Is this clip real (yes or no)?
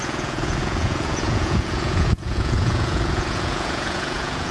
no